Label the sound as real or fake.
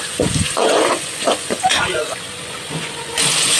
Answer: fake